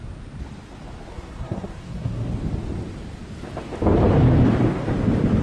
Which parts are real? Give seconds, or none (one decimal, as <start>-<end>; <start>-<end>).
0.0-1.1; 2.3-5.4